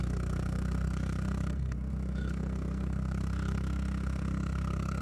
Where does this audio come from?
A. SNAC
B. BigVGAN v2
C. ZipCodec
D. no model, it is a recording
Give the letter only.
A